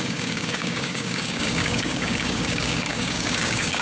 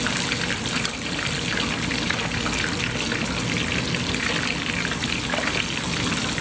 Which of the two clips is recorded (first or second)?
second